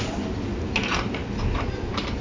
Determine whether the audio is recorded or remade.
recorded